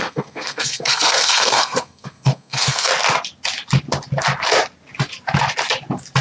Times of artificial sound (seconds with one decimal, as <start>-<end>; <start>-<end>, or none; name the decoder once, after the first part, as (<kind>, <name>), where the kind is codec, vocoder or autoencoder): 0.0-2.9 (codec, SNAC)